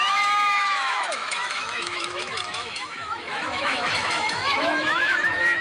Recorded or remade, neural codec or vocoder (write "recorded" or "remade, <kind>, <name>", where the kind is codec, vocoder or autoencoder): remade, autoencoder, DAC-VAE